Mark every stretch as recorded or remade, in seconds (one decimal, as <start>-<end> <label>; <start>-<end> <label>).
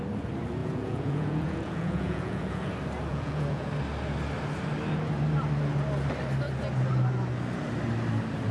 0.0-0.6 recorded; 0.6-2.7 remade; 2.7-3.1 recorded; 3.1-3.7 remade; 3.7-8.5 recorded